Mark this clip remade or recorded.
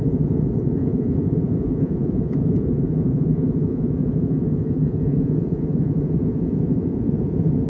remade